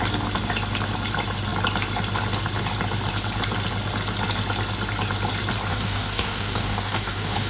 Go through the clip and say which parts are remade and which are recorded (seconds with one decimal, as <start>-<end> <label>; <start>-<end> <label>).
0.0-5.7 recorded; 5.7-7.5 remade